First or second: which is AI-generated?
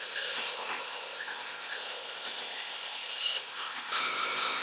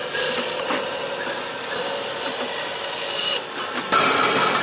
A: first